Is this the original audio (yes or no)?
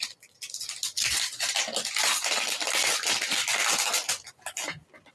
yes